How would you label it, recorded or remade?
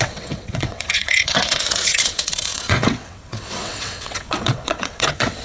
remade